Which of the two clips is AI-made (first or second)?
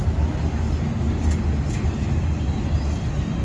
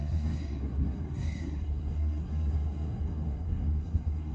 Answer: second